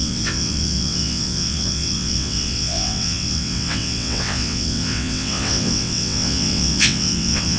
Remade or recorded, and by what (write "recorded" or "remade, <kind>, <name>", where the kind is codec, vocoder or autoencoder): remade, vocoder, WaveNeXt